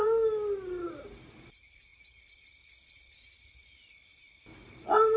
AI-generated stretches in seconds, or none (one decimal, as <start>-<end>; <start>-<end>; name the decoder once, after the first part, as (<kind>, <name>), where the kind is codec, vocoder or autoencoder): none